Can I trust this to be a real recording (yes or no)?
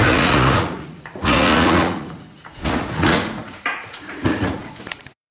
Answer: no